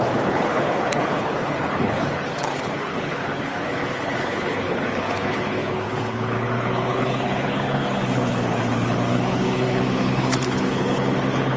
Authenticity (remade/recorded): remade